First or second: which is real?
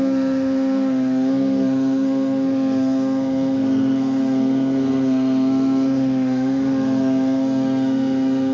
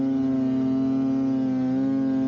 second